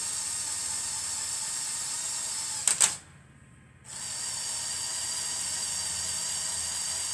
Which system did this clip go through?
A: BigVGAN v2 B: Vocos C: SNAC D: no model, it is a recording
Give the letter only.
D